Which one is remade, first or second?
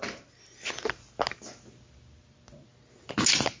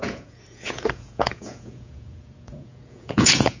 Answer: second